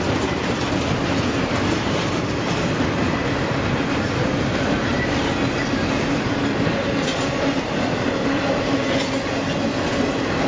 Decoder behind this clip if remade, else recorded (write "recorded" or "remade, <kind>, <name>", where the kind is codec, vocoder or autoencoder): recorded